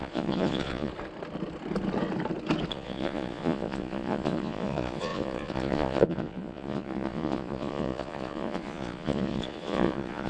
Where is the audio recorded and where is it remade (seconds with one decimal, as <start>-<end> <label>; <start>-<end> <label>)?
0.0-0.9 remade; 0.9-2.7 recorded; 2.7-10.3 remade